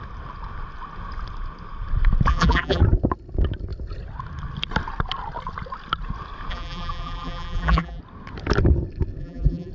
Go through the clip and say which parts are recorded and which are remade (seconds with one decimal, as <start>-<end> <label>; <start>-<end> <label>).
0.0-2.3 recorded; 2.3-2.8 remade; 2.8-6.5 recorded; 6.5-8.0 remade; 8.0-9.2 recorded; 9.2-9.7 remade